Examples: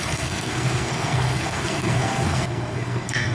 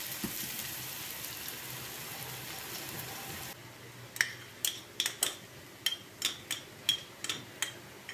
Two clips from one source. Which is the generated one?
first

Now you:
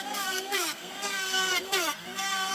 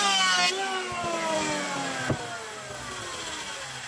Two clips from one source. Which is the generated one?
first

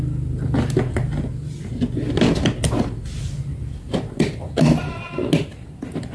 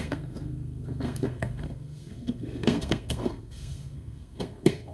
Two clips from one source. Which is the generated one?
second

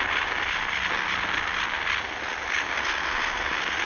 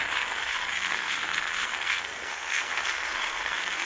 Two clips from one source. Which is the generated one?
second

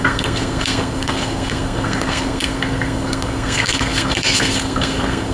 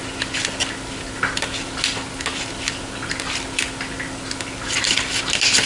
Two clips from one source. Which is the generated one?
first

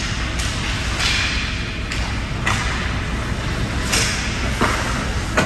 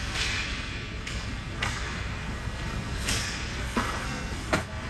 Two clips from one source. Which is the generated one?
second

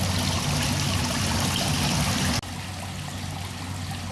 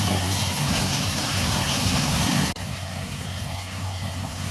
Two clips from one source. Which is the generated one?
second